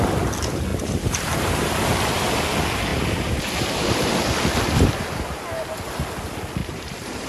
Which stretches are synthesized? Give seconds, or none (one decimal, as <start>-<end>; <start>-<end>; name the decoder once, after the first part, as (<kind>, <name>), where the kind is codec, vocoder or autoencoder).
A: 0.7-2.4 (vocoder, BigVGAN v2); 2.9-4.2; 6.6-7.3